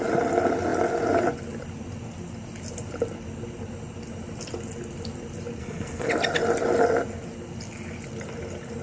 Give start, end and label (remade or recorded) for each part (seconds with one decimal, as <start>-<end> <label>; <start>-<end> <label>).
0.0-5.6 recorded; 5.6-6.1 remade; 6.1-8.8 recorded